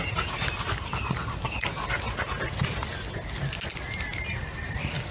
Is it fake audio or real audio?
real